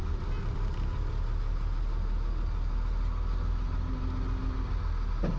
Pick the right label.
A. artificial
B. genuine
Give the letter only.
B